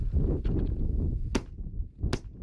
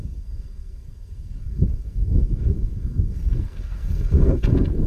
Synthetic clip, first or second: second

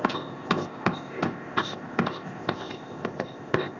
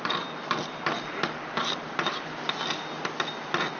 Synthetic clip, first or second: first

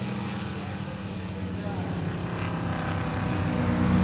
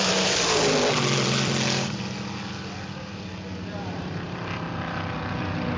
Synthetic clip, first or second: second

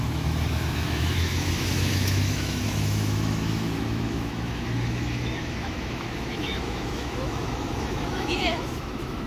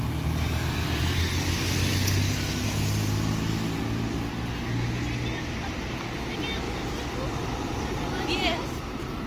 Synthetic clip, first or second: first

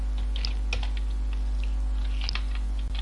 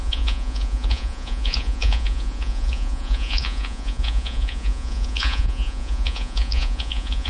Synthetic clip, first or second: second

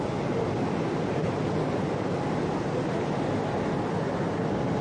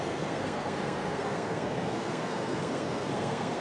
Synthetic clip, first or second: second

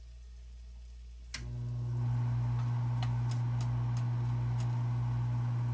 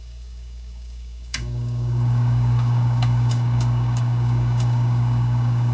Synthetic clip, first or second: second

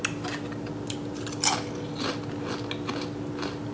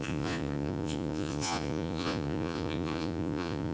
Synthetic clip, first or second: second